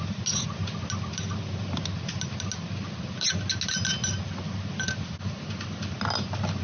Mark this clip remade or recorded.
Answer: recorded